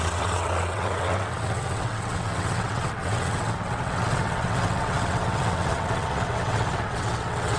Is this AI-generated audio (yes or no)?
yes